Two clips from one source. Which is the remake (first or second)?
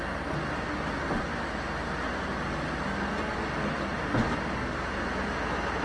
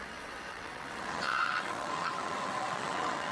second